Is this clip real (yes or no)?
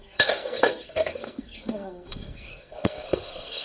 no